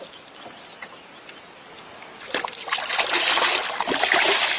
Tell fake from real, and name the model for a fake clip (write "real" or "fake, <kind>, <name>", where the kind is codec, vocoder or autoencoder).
real